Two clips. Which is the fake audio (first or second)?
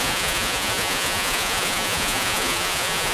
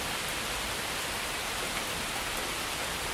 first